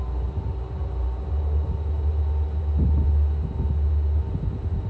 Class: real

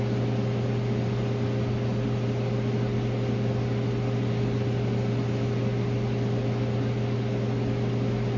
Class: real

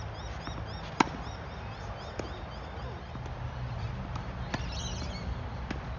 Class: real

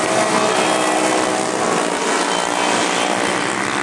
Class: real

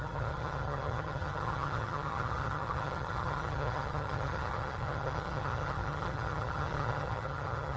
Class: fake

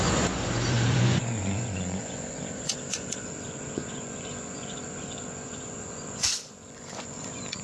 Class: fake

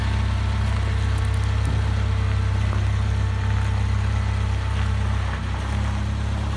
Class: real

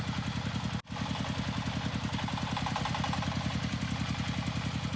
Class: real